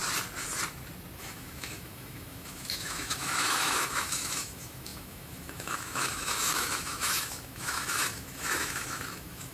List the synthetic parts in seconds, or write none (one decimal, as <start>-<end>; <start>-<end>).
1.2-9.5